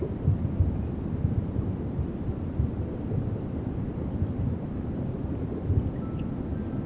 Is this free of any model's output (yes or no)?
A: yes